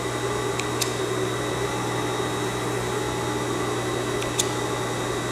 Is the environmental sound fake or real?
real